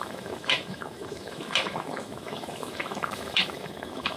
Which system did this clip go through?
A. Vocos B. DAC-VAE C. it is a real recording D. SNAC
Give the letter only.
B